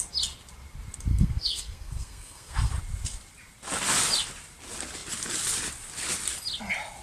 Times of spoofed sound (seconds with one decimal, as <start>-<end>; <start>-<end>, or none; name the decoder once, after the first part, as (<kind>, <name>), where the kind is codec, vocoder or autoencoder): 1.1-2.7 (codec, SNAC)